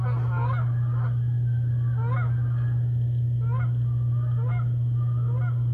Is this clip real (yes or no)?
yes